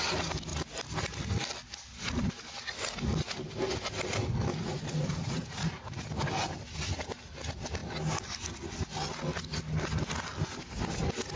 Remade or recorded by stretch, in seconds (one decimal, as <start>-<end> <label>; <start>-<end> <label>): 0.0-4.5 recorded; 4.5-6.1 remade; 6.1-11.4 recorded